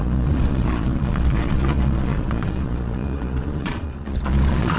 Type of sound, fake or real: fake